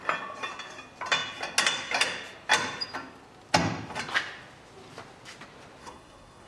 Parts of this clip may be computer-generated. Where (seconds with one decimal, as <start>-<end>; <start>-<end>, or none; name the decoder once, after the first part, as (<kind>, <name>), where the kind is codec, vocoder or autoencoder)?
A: 5.8-6.5 (codec, SNAC)